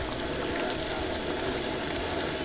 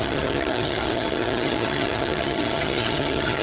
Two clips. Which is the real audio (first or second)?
first